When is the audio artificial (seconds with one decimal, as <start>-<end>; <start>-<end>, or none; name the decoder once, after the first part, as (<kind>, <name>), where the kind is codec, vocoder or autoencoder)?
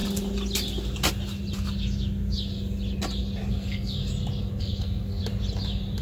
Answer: 3.5-4.0 (codec, SNAC); 4.6-5.2